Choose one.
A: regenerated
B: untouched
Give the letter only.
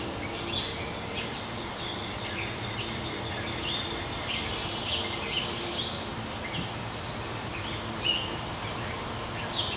B